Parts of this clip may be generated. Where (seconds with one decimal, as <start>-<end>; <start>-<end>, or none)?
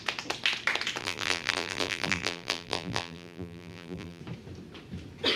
1.0-4.2